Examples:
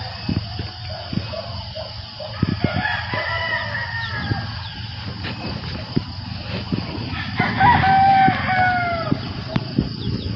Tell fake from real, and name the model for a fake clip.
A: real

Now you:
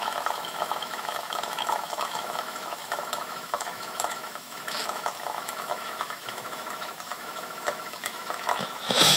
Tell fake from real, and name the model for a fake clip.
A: fake, autoencoder, DAC-VAE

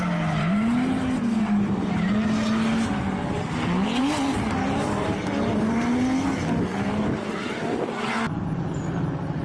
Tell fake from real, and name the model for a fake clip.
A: real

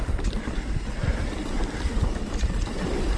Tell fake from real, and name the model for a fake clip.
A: fake, vocoder, BigVGAN v2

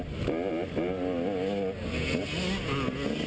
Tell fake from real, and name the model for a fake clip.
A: real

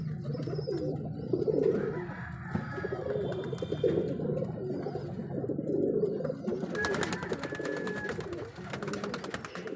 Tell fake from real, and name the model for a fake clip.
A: real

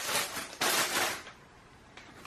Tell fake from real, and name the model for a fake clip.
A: fake, vocoder, BigVGAN v2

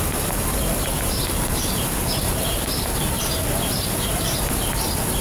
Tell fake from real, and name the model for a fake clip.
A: fake, vocoder, BigVGAN v2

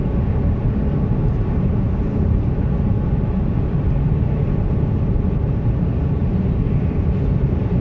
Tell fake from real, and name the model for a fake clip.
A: real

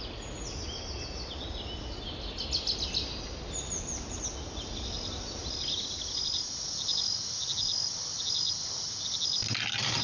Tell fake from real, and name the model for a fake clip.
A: real